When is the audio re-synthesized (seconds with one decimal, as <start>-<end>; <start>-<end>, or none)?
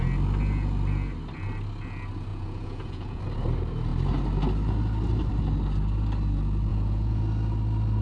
2.3-3.2; 6.7-7.2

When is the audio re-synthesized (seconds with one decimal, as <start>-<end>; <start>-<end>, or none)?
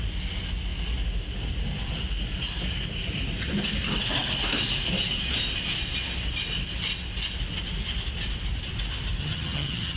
9.2-10.0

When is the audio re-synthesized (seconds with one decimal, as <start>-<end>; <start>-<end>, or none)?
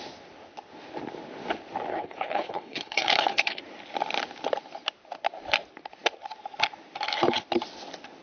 1.9-3.6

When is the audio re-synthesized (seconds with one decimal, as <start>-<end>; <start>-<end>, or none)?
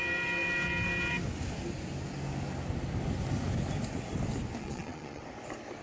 4.6-5.2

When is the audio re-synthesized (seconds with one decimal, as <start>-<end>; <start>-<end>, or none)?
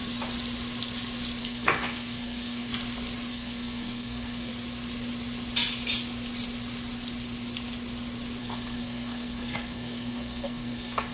1.4-2.7; 3.3-4.5; 8.4-11.1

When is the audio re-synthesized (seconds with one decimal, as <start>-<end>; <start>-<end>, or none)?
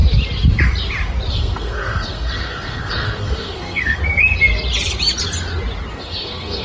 1.3-4.0; 5.9-6.6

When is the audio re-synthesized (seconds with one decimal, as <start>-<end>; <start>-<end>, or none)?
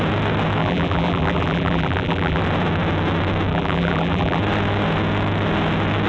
0.6-2.4; 3.5-4.4